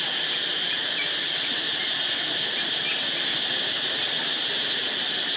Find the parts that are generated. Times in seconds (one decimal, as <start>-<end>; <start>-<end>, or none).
none